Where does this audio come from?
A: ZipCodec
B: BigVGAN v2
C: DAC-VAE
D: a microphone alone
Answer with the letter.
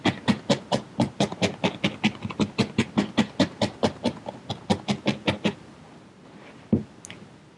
D